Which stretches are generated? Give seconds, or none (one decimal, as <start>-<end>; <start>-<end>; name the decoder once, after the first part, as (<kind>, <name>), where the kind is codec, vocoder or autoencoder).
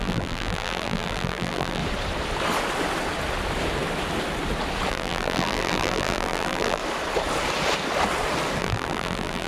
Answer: 0.0-1.8 (vocoder, BigVGAN v2); 4.9-6.8; 8.6-9.5